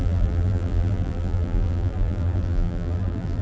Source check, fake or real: fake